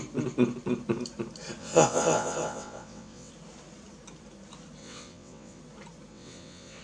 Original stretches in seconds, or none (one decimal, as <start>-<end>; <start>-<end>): 0.0-1.6; 3.3-4.8; 5.6-6.1